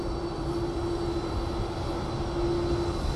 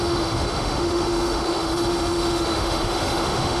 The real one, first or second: first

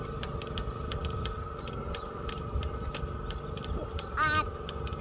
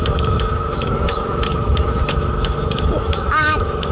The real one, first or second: first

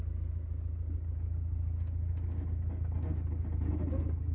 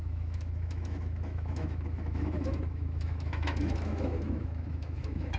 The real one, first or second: first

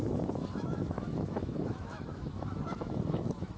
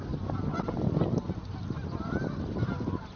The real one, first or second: second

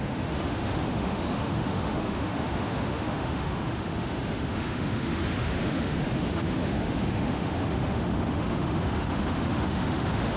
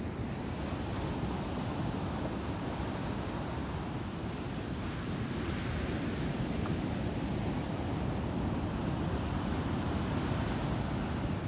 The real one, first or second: second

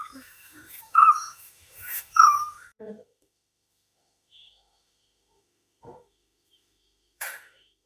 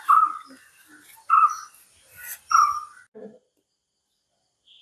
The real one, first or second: second